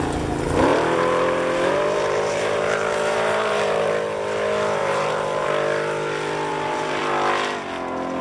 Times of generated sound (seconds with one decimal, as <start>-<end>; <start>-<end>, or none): 0.7-3.9; 4.8-5.5; 6.5-7.0